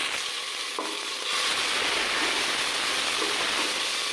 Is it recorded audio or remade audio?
recorded